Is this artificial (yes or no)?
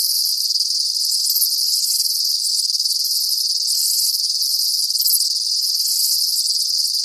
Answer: no